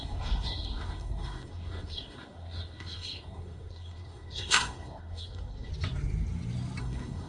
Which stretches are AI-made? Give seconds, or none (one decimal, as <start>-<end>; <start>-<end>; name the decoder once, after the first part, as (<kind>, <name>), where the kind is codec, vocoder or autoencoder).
0.0-5.7 (codec, SNAC); 6.8-7.3